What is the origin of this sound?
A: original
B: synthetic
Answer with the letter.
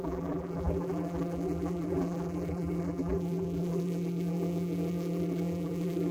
B